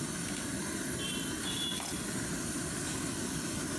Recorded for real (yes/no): yes